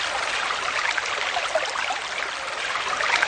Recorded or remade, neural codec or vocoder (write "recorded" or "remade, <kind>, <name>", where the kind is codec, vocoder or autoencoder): recorded